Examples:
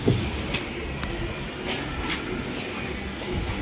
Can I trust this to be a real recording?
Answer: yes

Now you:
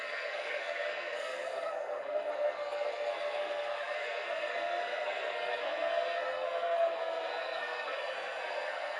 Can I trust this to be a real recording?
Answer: no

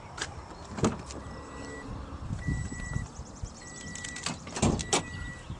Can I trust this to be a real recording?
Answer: yes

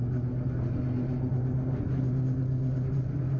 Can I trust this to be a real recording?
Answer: yes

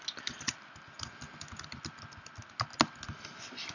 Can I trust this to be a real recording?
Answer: yes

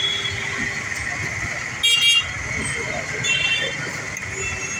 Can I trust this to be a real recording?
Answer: yes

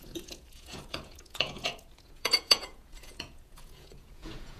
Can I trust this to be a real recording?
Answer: no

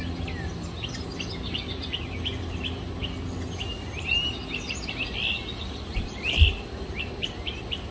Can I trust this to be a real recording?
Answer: yes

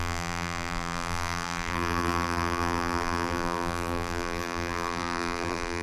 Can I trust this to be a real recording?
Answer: no